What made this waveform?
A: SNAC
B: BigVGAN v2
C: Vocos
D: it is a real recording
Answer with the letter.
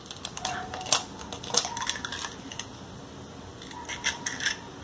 D